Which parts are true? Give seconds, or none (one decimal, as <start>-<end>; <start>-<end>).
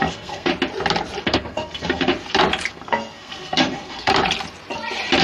0.5-1.2; 2.1-2.7; 4.1-5.2